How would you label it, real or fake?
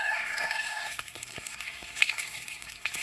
fake